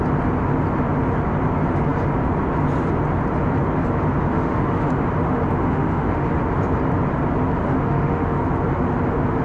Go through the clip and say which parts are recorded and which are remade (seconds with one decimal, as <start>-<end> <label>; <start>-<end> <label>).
0.0-4.2 recorded; 4.2-4.9 remade; 4.9-5.6 recorded; 5.6-6.3 remade; 6.3-7.6 recorded; 7.6-8.4 remade; 8.4-9.4 recorded